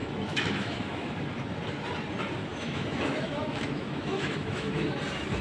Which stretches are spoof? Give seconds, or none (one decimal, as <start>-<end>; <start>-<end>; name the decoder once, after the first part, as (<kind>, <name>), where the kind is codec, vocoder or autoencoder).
0.0-1.2 (autoencoder, DAC-VAE); 2.5-5.0